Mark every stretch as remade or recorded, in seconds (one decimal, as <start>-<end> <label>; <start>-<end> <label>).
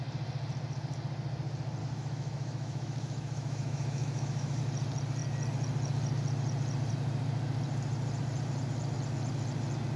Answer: 0.0-1.8 recorded; 1.8-4.6 remade; 4.6-10.0 recorded